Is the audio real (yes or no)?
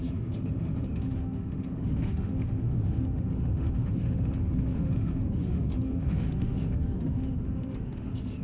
no